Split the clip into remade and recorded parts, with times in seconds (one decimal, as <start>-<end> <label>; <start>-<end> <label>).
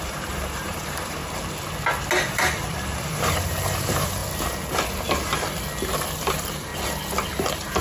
0.0-1.2 remade; 1.2-2.3 recorded; 2.3-4.2 remade; 4.2-6.3 recorded; 6.3-6.7 remade; 6.7-7.3 recorded; 7.3-7.8 remade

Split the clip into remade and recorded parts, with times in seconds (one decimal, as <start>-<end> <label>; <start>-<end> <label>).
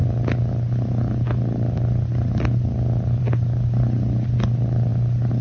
0.0-5.4 recorded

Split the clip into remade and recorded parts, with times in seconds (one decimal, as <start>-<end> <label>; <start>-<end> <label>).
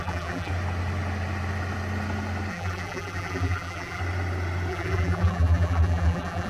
0.0-0.5 remade; 0.5-2.5 recorded; 2.5-4.0 remade; 4.0-4.7 recorded; 4.7-6.5 remade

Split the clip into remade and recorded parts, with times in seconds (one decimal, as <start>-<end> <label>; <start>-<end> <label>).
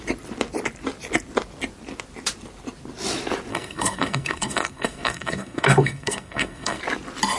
0.0-3.5 recorded; 3.5-6.8 remade; 6.8-7.4 recorded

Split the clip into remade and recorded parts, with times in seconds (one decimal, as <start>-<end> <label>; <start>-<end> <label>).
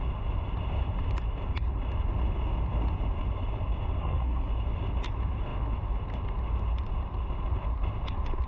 0.0-4.0 recorded; 4.0-4.5 remade; 4.5-8.5 recorded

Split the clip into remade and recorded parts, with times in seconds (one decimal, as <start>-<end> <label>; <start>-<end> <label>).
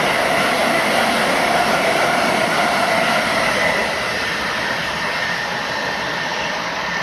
0.0-7.0 recorded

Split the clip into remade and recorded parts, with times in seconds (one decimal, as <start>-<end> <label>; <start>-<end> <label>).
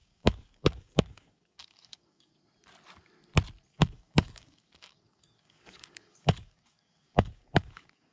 0.0-2.3 remade; 2.3-3.7 recorded; 3.7-8.1 remade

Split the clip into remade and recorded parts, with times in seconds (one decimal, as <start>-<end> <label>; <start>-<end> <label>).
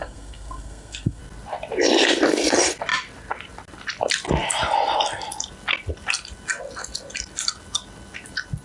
0.0-1.2 remade; 1.2-8.6 recorded